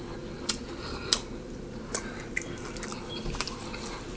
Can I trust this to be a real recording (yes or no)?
yes